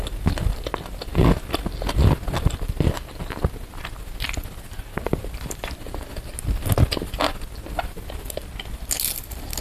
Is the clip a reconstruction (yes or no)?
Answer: no